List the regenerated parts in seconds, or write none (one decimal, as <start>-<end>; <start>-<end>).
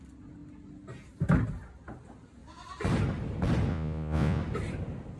3.7-4.4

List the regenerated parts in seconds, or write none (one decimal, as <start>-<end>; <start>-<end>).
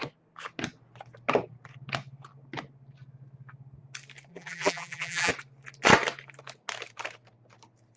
4.3-5.3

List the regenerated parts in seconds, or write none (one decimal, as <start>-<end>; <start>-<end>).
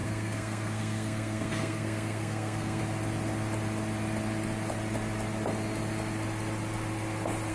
0.0-2.8